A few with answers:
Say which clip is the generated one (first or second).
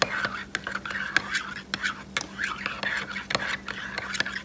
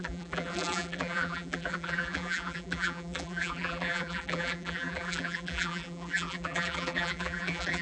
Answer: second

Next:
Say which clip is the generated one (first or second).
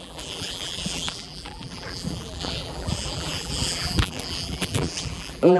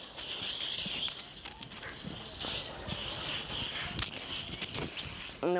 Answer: first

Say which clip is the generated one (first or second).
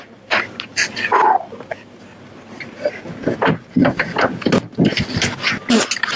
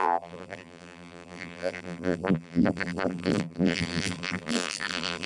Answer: second